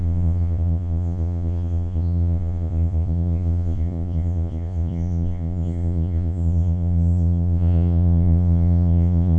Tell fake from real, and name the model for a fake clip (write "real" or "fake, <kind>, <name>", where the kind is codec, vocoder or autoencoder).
fake, vocoder, Vocos